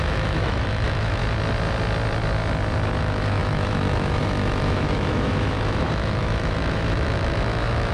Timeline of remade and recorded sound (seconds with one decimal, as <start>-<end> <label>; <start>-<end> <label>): 0.0-1.2 remade; 1.2-3.0 recorded; 3.0-7.9 remade